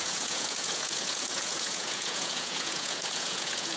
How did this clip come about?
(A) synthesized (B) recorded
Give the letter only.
A